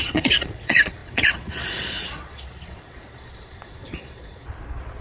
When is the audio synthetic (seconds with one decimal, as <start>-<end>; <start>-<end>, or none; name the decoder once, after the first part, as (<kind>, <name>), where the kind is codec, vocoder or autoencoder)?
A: 0.0-5.0 (vocoder, Vocos)